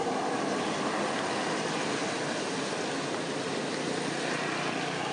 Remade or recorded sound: recorded